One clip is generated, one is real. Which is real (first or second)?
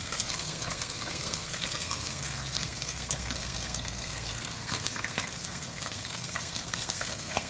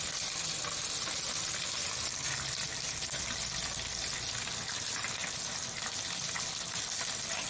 second